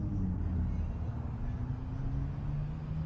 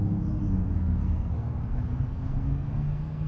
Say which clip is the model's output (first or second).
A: second